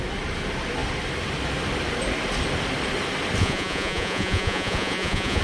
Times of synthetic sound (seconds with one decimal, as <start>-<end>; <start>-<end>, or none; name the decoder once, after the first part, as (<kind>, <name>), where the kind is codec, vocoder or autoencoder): 3.4-5.4 (vocoder, Vocos)